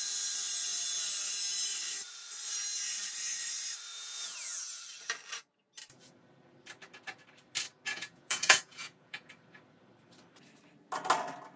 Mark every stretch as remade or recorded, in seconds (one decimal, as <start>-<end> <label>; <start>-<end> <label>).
0.0-3.9 recorded; 3.9-4.8 remade; 4.8-7.9 recorded; 7.9-9.3 remade; 9.3-11.6 recorded